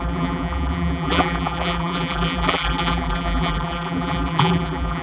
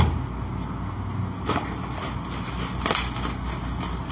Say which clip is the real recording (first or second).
second